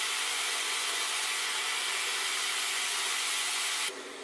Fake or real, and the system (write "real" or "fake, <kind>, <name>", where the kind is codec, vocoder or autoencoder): fake, vocoder, Vocos